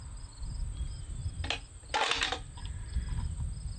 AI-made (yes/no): no